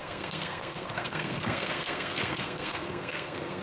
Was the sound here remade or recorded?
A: remade